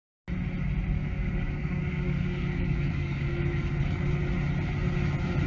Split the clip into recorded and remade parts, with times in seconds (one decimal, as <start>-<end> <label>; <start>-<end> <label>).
0.0-1.0 recorded; 1.0-4.1 remade; 4.1-5.5 recorded